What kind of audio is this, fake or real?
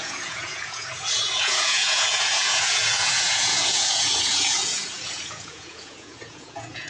fake